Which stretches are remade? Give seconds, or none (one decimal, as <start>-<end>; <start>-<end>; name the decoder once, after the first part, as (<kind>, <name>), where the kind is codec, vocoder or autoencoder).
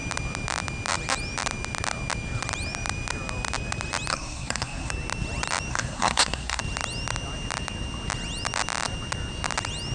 4.1-4.9 (codec, SNAC); 5.7-6.6